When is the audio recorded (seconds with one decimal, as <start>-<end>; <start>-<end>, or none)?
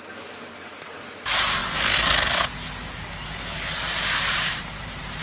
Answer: 1.6-4.3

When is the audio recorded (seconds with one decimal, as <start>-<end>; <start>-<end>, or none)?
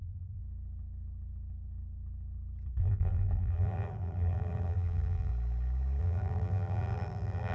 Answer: 0.4-2.8; 5.3-6.0